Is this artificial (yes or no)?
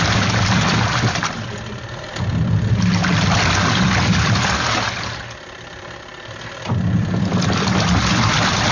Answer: yes